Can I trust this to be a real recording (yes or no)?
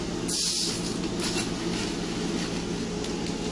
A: yes